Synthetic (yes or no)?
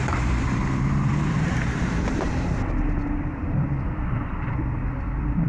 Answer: yes